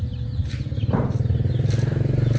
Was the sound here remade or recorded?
recorded